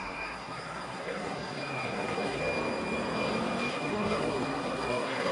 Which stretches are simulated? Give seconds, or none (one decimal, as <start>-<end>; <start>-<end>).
0.0-2.4; 3.7-5.3